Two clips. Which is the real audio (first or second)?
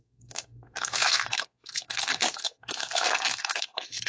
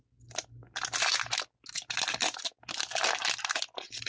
second